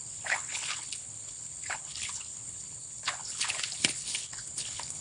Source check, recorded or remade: remade